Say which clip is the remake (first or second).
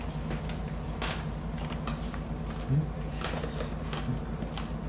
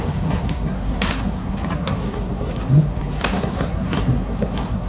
second